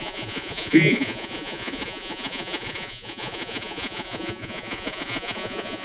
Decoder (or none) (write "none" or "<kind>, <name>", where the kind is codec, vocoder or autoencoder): vocoder, Vocos